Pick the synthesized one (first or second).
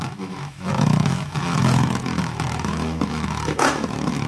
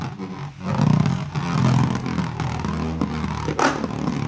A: first